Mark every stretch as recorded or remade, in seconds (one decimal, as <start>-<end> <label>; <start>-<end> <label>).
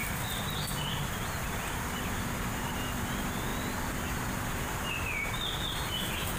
0.0-0.9 recorded; 0.9-6.4 remade